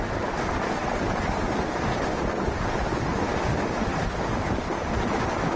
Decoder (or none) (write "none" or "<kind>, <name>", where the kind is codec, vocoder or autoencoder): none